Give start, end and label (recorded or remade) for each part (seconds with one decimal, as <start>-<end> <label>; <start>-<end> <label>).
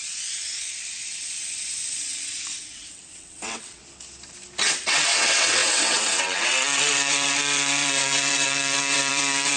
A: 0.0-3.8 remade; 3.8-4.6 recorded; 4.6-9.6 remade